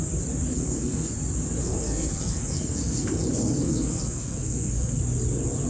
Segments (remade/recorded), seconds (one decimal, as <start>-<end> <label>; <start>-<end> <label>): 0.0-0.5 recorded; 0.5-1.1 remade; 1.1-1.6 recorded; 1.6-5.0 remade; 5.0-5.7 recorded